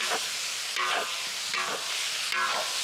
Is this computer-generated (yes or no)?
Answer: no